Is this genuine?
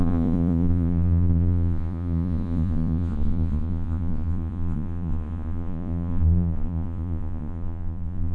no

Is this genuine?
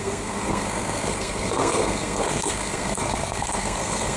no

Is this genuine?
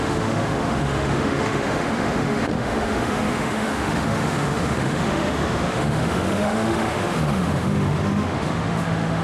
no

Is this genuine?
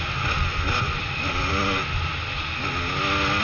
yes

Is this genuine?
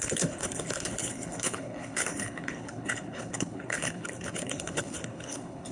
no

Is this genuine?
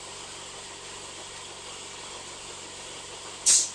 yes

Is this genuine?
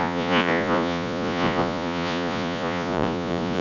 no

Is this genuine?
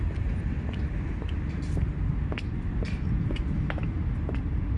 yes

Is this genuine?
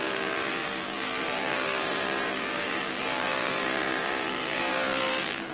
no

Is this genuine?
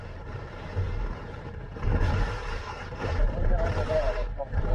no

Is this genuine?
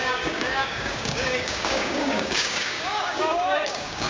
no